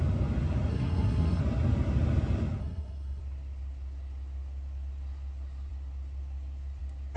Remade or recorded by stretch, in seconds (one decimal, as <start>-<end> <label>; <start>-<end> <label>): 0.0-0.7 recorded; 0.7-1.4 remade; 1.4-2.6 recorded; 2.6-3.2 remade; 3.2-7.2 recorded